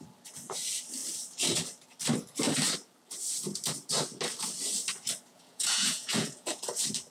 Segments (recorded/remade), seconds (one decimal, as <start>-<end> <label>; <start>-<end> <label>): 0.0-5.3 recorded; 5.3-6.6 remade; 6.6-7.1 recorded